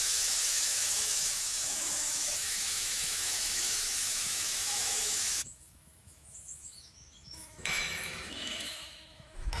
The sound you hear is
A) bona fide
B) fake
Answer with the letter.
B